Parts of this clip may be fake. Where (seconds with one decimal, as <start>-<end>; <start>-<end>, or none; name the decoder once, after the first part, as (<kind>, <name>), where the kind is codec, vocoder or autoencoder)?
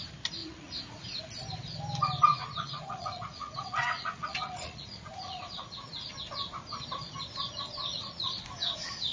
0.4-1.2 (vocoder, Vocos); 2.3-6.1; 7.8-8.4